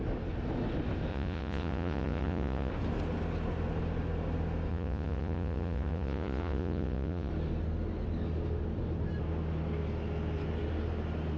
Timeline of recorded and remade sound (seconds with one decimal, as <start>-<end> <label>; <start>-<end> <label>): 0.0-1.1 recorded; 1.1-2.7 remade; 2.7-4.7 recorded; 4.7-7.3 remade; 7.3-11.4 recorded